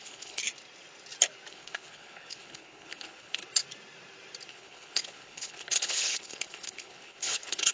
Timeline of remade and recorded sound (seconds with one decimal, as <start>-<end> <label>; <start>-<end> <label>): 0.0-0.4 remade; 0.4-1.5 recorded; 1.5-3.4 remade; 3.4-4.5 recorded; 4.5-7.7 remade